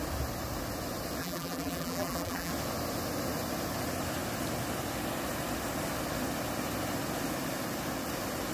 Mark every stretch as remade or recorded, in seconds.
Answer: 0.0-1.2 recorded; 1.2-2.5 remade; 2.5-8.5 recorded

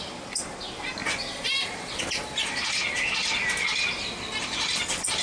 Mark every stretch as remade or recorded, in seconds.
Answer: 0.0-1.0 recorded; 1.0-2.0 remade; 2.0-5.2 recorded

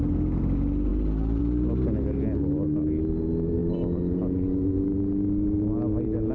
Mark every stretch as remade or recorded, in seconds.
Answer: 0.0-6.3 recorded

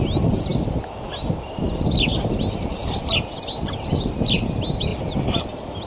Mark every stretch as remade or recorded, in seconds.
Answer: 0.0-0.5 recorded; 0.5-1.3 remade; 1.3-2.8 recorded; 2.8-3.3 remade; 3.3-4.9 recorded; 4.9-5.9 remade

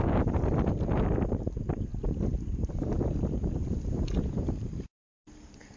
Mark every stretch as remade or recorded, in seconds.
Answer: 0.0-5.8 recorded

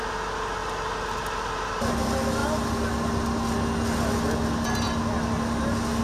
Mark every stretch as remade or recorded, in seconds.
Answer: 0.0-6.0 recorded